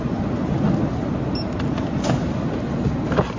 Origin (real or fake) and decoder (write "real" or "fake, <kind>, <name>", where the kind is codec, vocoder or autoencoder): real